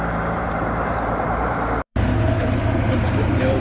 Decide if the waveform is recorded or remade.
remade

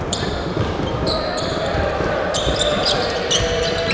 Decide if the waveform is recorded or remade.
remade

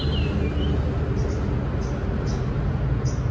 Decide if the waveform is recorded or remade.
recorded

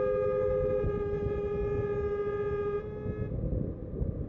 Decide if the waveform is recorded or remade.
recorded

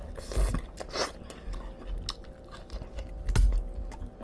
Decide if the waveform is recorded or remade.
recorded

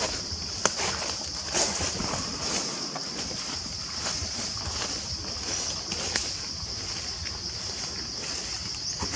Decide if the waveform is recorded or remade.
recorded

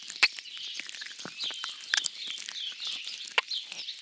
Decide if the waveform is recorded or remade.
recorded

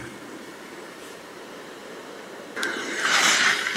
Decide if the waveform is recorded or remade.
remade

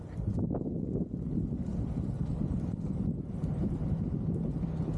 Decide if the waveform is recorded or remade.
recorded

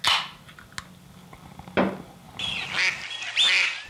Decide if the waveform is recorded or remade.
recorded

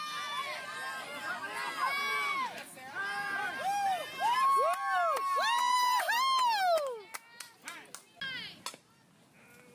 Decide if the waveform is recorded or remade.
recorded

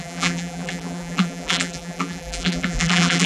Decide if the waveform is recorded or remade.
remade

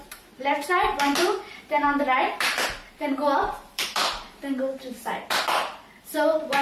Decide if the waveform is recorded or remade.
remade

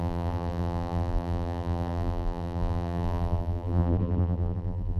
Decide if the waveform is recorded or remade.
remade